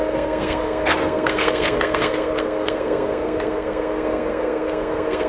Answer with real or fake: fake